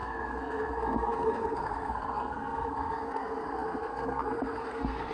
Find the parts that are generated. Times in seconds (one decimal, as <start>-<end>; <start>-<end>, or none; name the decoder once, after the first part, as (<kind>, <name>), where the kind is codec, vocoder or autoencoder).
0.0-5.1 (codec, SNAC)